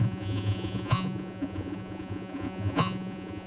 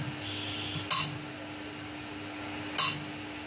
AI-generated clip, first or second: first